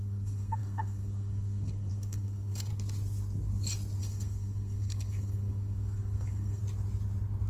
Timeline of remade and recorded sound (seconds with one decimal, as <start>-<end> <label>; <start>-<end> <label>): 0.0-2.7 remade; 2.7-4.0 recorded; 4.0-6.6 remade; 6.6-7.5 recorded